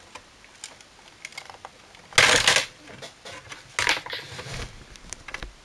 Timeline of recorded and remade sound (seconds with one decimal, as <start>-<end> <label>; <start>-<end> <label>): 0.0-5.6 recorded